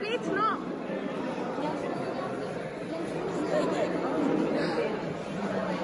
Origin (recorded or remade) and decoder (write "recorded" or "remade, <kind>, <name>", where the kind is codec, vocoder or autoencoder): remade, vocoder, BigVGAN v2